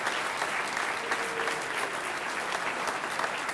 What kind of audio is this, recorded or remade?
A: recorded